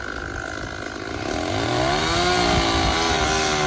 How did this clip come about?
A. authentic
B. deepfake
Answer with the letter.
A